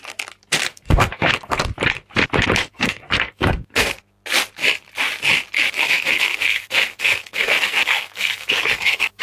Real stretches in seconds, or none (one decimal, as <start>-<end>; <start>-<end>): 0.0-0.7; 1.5-2.6; 4.0-5.8